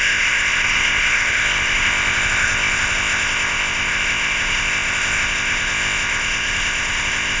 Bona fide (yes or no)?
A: no